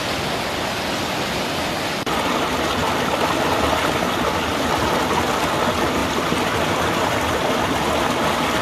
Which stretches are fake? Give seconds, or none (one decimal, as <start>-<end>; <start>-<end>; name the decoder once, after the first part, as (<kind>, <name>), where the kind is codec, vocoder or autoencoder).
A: none